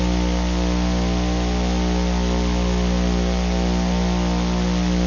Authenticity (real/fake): real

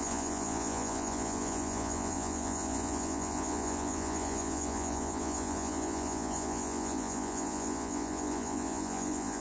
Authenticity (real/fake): fake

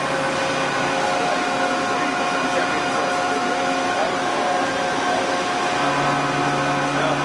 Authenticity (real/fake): real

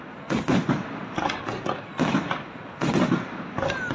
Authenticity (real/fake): real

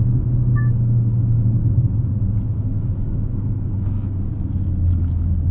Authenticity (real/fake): real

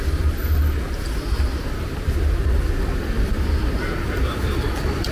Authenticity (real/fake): real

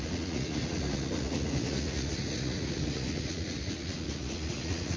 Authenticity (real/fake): fake